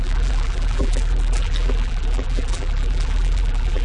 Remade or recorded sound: remade